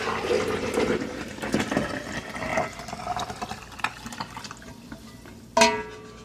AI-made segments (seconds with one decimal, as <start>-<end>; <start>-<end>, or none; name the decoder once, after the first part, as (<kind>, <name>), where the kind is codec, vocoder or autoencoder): none